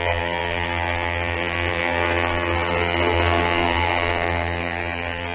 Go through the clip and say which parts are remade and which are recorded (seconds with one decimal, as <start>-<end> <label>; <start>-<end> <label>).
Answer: 0.0-5.3 remade